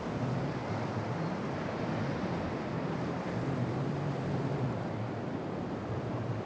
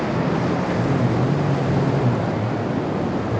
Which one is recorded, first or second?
second